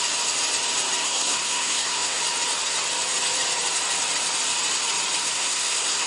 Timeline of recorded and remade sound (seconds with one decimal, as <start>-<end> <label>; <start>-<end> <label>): 0.0-1.0 recorded; 1.0-2.2 remade; 2.2-5.2 recorded; 5.2-6.1 remade